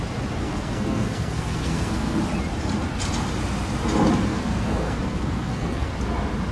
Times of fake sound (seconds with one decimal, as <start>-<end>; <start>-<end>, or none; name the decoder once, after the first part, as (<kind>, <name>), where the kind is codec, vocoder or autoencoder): 0.4-2.2 (codec, SNAC); 4.3-5.9